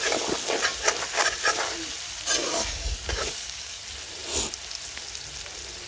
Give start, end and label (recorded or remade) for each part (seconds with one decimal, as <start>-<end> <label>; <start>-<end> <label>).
0.0-2.4 recorded; 2.4-3.8 remade; 3.8-5.9 recorded